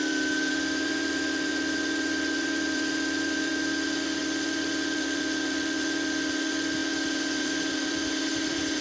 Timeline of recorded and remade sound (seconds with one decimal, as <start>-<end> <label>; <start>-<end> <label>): 0.0-3.5 remade; 3.5-4.2 recorded; 4.2-8.8 remade